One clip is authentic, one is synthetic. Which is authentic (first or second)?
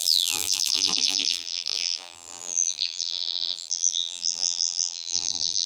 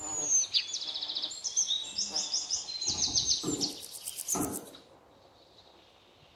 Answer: second